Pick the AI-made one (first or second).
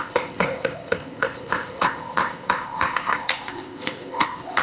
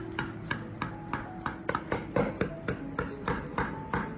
first